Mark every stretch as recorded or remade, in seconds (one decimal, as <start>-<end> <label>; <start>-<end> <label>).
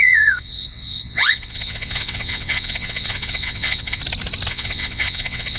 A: 0.0-4.0 remade; 4.0-4.5 recorded; 4.5-5.6 remade